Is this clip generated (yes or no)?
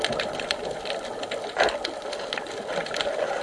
no